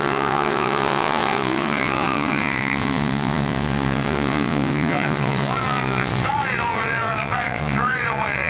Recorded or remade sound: remade